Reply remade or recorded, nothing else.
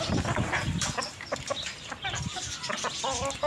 recorded